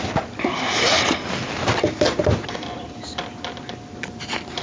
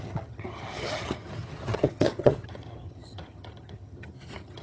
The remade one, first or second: second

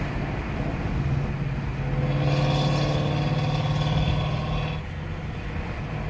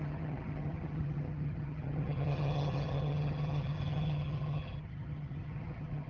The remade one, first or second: second